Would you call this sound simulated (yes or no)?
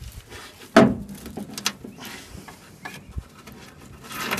no